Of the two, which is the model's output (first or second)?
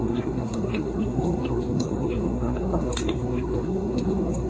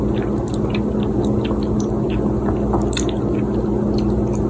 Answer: first